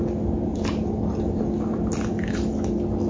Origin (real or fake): real